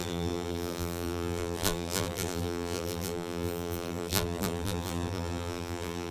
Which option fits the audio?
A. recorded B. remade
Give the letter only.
B